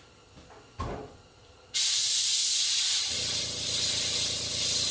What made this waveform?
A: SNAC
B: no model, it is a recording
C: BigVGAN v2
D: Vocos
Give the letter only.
B